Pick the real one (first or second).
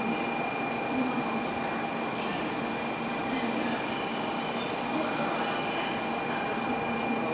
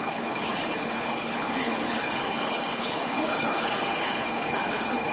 first